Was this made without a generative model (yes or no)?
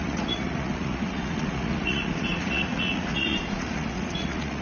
no